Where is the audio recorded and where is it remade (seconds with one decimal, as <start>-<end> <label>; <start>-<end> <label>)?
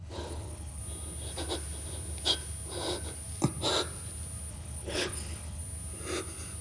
0.0-0.8 remade; 0.8-4.5 recorded; 4.5-5.6 remade; 5.6-6.6 recorded